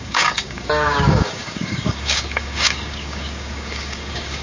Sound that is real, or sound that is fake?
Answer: fake